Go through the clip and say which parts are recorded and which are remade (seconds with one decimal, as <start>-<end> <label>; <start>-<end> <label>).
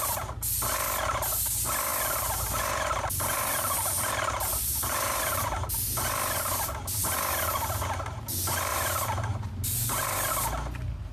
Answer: 0.0-1.9 recorded; 1.9-4.0 remade; 4.0-4.5 recorded; 4.5-5.7 remade; 5.7-8.7 recorded; 8.7-10.3 remade; 10.3-11.1 recorded